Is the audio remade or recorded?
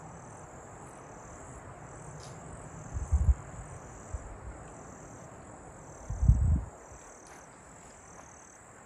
recorded